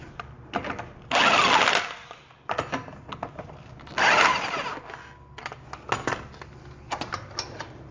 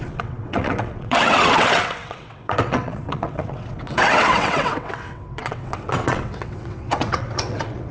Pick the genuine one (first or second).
first